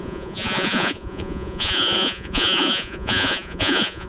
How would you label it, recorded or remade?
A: remade